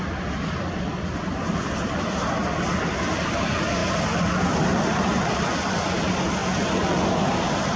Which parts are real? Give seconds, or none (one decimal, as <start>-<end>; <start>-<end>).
2.4-3.1; 6.4-7.2